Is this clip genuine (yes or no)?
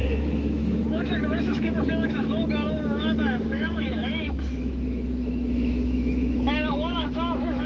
no